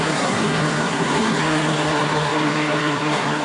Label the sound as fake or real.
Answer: fake